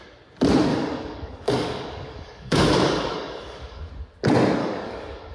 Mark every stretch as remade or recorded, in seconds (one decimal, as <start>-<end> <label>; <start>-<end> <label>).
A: 0.0-0.7 recorded; 0.7-3.9 remade; 3.9-4.6 recorded; 4.6-5.3 remade